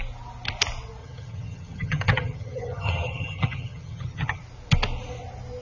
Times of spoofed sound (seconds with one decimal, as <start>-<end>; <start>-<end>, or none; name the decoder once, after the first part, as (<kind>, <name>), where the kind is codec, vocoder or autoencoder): 1.0-4.4 (vocoder, HiFi-GAN)

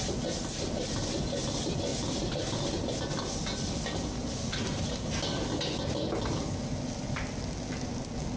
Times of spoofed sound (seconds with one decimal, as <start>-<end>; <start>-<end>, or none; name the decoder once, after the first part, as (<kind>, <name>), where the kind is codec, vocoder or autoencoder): none

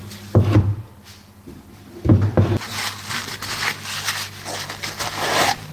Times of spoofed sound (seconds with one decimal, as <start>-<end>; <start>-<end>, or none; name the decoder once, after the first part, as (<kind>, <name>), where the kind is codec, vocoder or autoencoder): none